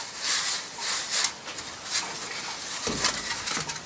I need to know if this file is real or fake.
real